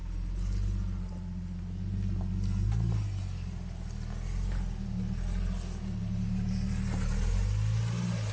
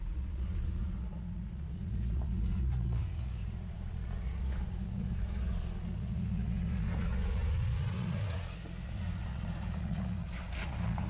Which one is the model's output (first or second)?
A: second